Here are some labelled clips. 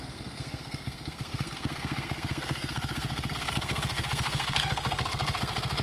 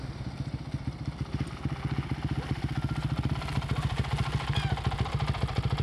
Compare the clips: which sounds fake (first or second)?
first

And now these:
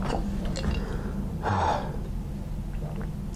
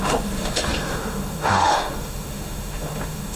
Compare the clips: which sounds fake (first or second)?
second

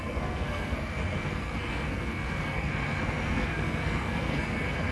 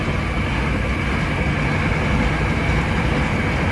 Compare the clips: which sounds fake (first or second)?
first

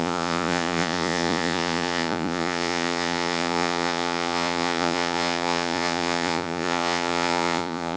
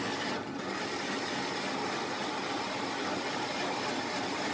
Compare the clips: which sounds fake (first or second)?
first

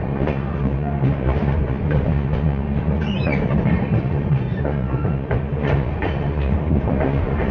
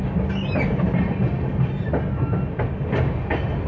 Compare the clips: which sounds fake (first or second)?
first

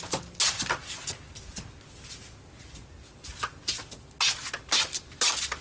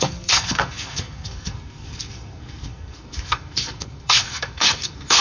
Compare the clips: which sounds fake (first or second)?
second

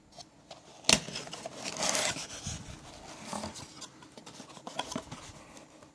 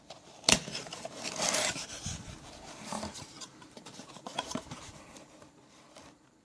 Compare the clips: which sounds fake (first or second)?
second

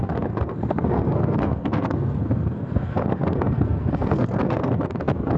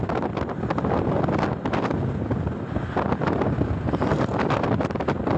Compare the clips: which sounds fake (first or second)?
first